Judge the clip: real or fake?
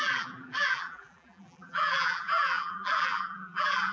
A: fake